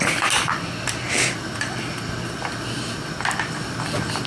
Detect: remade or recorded recorded